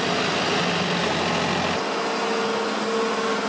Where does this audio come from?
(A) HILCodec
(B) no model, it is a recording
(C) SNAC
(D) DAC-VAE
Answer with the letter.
B